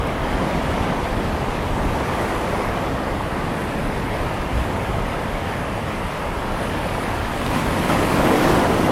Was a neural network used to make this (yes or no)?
yes